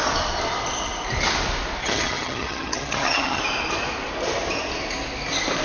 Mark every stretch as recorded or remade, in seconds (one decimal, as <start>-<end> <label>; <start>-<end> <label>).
0.0-1.8 recorded; 1.8-3.4 remade; 3.4-5.6 recorded